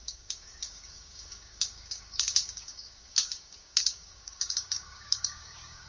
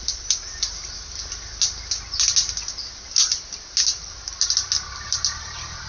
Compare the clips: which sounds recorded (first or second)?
second